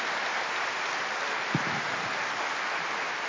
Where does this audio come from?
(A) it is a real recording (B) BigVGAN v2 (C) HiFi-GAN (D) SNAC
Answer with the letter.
A